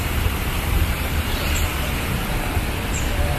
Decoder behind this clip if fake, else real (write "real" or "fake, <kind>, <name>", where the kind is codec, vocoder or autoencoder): fake, vocoder, BigVGAN v2